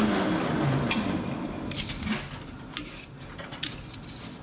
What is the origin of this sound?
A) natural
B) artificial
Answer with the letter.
A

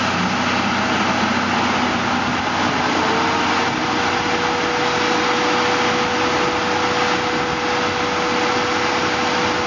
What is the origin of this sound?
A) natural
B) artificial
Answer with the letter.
A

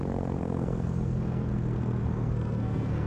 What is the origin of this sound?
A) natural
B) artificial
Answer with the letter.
B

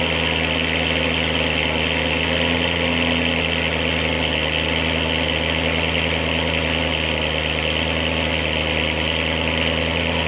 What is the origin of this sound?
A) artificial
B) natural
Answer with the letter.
B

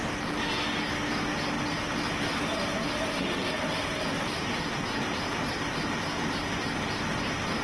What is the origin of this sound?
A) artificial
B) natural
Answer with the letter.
B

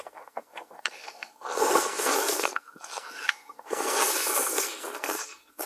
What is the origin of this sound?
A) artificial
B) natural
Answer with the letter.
A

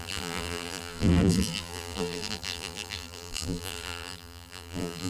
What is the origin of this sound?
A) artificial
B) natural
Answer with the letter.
A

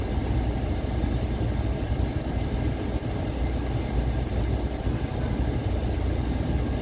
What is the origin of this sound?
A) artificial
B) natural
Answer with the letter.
B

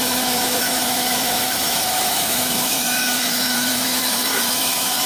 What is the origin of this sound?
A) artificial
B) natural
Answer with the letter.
A